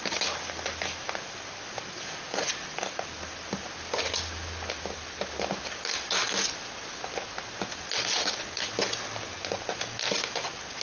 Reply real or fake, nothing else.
real